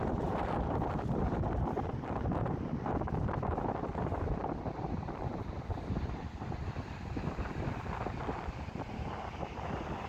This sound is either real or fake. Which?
real